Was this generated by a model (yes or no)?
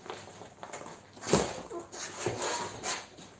no